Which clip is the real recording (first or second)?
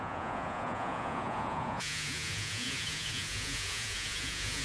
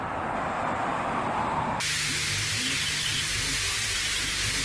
second